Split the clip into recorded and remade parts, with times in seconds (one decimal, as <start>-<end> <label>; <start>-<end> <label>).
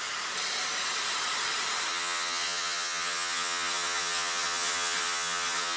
0.0-1.9 recorded; 1.9-5.8 remade